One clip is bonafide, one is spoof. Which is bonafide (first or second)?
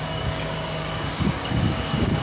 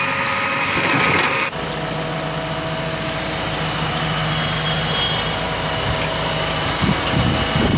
second